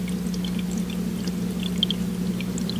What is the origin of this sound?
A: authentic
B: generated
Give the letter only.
A